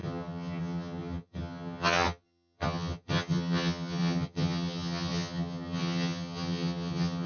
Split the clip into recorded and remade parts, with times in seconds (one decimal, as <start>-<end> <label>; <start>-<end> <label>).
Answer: 0.0-7.3 remade

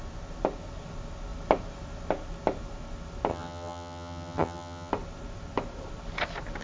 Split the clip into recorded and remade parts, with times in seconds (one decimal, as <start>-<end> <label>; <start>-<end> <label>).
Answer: 0.0-3.3 recorded; 3.3-4.9 remade; 4.9-6.6 recorded

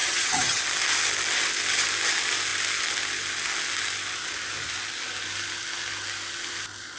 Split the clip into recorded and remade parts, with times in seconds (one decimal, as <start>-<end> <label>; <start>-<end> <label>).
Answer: 0.0-0.6 remade; 0.6-7.0 recorded

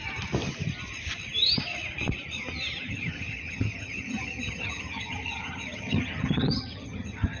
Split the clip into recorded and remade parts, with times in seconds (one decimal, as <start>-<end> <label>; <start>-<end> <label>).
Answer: 0.0-2.9 recorded; 2.9-7.4 remade

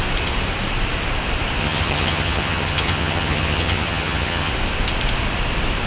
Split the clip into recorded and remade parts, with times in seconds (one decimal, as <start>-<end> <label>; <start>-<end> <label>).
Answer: 0.0-1.6 recorded; 1.6-4.5 remade; 4.5-5.9 recorded